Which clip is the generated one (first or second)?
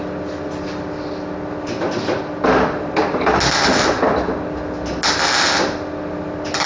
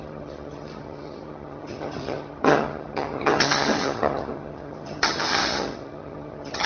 second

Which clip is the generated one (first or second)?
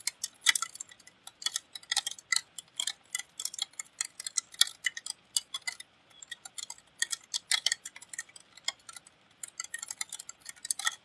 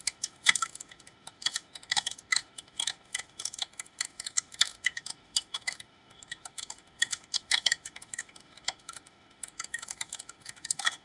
second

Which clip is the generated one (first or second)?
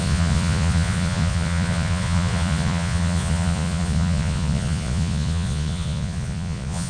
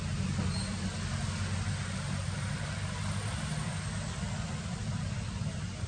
first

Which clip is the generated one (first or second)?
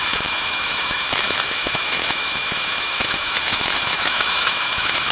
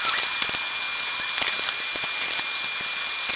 first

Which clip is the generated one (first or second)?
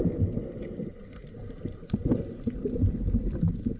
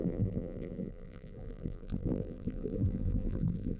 second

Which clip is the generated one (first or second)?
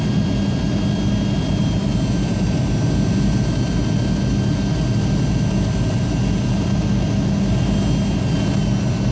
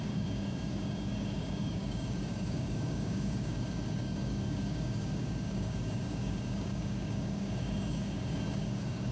second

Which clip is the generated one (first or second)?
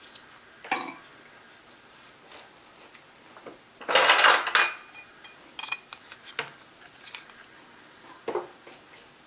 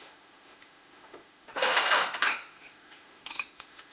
second